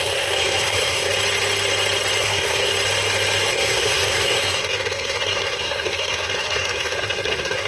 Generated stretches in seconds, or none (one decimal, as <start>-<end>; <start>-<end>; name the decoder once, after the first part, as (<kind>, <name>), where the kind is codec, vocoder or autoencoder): 0.0-1.1 (codec, SNAC); 2.2-2.7; 3.5-7.7